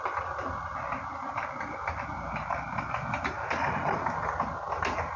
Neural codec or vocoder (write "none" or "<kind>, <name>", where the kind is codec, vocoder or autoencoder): none